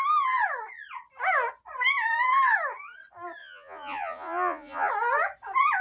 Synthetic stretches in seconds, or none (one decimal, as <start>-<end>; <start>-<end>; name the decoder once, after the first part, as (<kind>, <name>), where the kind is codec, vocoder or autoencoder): 3.4-4.9 (vocoder, Vocos)